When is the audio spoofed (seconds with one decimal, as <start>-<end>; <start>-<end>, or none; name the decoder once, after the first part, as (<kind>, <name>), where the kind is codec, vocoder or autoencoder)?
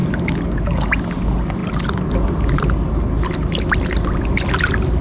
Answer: 0.0-1.0 (codec, DAC)